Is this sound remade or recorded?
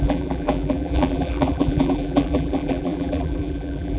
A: remade